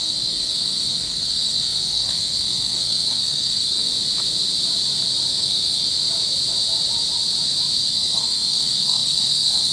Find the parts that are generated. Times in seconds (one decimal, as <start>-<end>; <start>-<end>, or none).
0.0-3.9; 5.3-5.9; 7.9-9.7

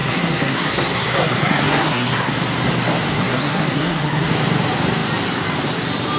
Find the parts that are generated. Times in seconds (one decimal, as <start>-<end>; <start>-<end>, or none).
0.0-2.3; 3.1-4.3